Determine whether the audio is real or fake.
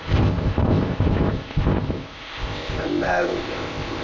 fake